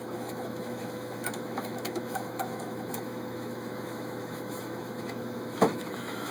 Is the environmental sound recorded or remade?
remade